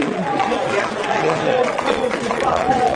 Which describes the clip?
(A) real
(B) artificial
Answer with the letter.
B